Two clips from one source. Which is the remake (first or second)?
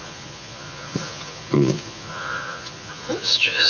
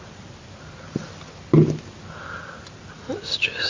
first